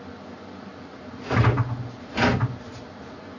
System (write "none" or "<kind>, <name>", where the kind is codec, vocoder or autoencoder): none